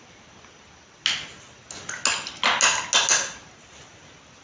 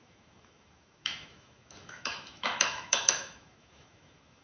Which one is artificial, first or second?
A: second